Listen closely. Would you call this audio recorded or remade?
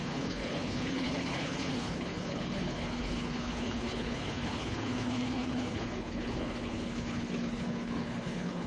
remade